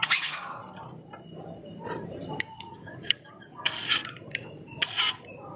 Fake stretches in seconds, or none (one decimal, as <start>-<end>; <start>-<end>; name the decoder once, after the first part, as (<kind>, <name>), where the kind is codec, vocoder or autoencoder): 0.0-0.6 (codec, DAC); 2.4-4.0